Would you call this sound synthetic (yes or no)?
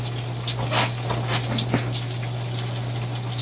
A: no